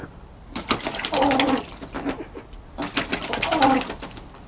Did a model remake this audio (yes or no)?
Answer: no